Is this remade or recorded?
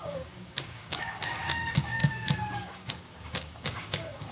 remade